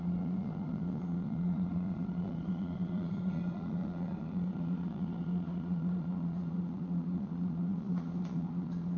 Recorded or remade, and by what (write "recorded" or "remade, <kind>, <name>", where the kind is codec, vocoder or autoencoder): remade, vocoder, Vocos